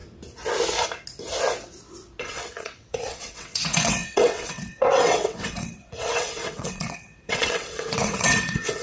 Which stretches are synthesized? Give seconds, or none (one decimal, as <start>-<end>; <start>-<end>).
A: 2.2-8.8